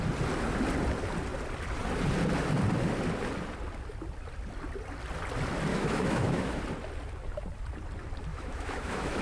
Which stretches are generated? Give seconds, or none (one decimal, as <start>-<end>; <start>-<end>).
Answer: 5.7-6.6; 8.3-9.2